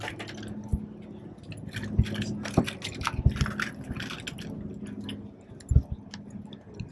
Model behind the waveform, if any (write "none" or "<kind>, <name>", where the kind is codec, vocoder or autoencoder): none